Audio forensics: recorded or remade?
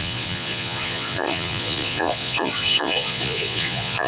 remade